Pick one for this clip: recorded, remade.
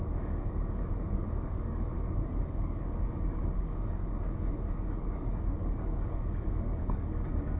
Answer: remade